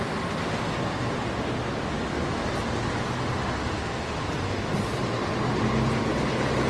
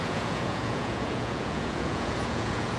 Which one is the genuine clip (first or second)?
first